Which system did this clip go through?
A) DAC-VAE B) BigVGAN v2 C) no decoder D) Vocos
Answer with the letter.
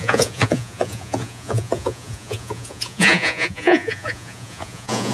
D